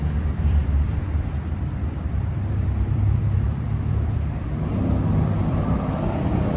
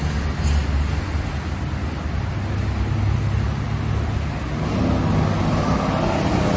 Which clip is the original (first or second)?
second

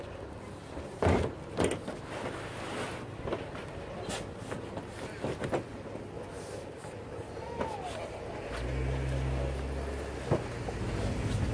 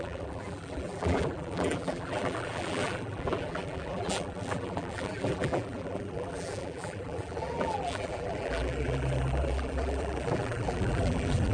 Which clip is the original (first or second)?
first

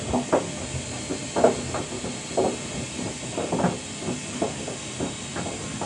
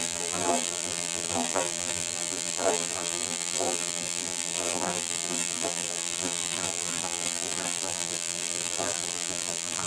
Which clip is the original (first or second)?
first